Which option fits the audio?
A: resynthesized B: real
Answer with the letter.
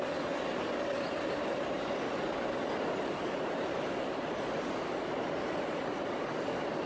B